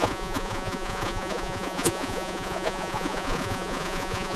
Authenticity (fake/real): fake